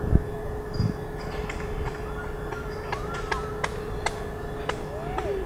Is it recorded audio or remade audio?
recorded